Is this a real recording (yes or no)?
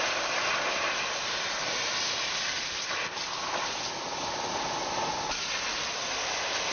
yes